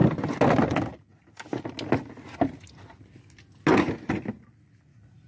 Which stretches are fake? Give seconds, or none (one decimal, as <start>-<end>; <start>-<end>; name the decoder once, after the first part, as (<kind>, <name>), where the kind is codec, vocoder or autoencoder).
none